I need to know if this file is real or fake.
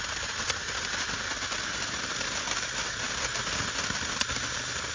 real